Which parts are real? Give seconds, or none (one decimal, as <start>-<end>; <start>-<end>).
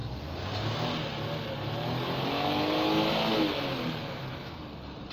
0.0-4.0; 4.6-5.1